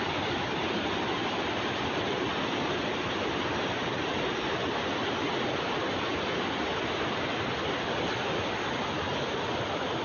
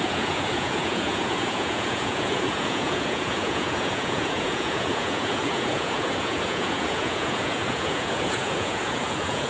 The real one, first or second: first